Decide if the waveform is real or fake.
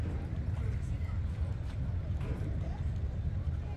real